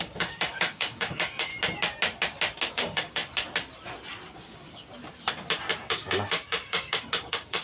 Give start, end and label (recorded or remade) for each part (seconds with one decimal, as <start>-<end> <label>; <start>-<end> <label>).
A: 0.0-1.5 remade; 1.5-2.7 recorded; 2.7-3.2 remade; 3.2-4.3 recorded; 4.3-4.9 remade; 4.9-5.7 recorded; 5.7-7.6 remade